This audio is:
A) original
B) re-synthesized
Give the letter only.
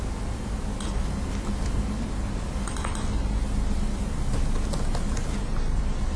A